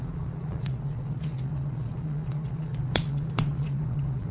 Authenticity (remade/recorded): remade